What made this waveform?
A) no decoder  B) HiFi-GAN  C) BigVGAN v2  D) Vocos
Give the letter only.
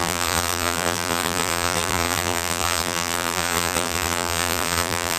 C